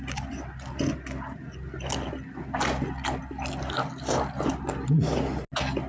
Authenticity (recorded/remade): recorded